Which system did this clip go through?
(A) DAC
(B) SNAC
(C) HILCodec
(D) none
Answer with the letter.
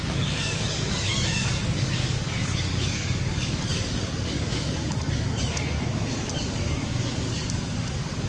A